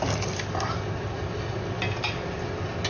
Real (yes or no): yes